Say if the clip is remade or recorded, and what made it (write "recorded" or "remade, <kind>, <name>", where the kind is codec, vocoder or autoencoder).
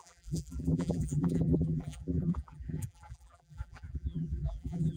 remade, vocoder, BigVGAN v2